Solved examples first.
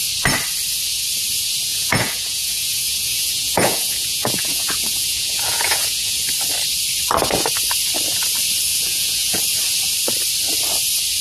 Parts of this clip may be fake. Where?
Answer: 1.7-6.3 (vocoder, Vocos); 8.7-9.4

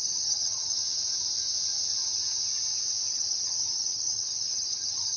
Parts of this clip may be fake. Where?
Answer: 0.0-0.8 (vocoder, HiFi-GAN); 3.1-5.2